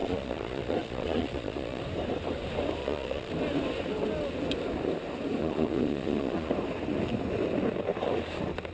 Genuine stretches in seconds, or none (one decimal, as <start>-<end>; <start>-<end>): 1.8-2.8; 3.3-5.4; 6.5-8.7